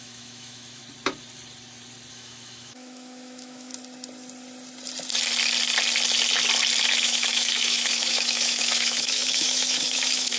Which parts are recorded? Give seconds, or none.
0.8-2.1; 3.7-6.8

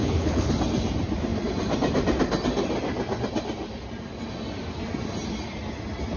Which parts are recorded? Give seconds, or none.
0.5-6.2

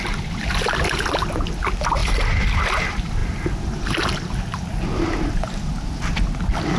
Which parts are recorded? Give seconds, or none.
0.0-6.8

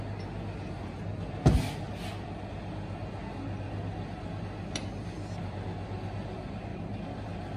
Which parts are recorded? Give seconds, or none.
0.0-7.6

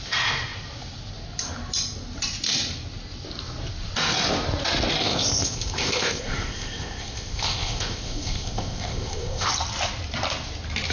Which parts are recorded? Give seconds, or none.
0.0-5.0; 9.5-10.9

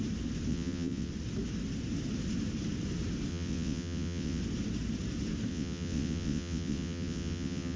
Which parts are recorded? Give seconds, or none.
0.0-0.5; 1.1-3.3; 4.4-5.5